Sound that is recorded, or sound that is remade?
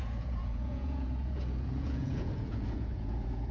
remade